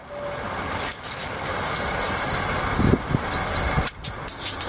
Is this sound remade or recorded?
recorded